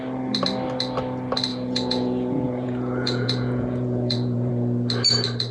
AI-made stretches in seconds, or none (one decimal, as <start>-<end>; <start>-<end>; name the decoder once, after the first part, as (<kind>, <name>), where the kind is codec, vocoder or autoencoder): 1.5-4.5 (vocoder, Vocos)